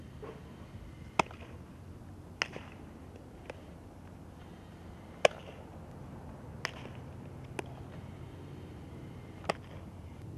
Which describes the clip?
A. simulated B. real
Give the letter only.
B